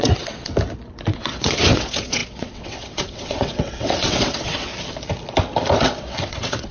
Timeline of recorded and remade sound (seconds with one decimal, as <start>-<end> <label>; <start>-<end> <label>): 0.0-0.5 remade; 0.5-1.1 recorded; 1.1-4.7 remade; 4.7-5.8 recorded; 5.8-6.7 remade